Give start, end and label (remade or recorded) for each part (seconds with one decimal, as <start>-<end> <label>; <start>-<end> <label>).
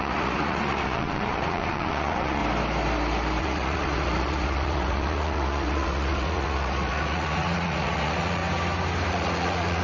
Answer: 0.0-2.4 remade; 2.4-3.4 recorded; 3.4-8.4 remade; 8.4-9.1 recorded; 9.1-9.8 remade